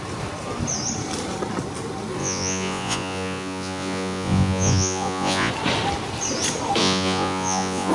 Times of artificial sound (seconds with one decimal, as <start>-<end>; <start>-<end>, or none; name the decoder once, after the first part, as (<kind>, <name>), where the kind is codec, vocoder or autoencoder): 2.2-5.5 (vocoder, Vocos); 6.8-7.9